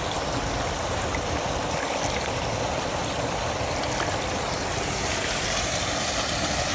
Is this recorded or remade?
recorded